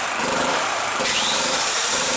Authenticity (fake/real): fake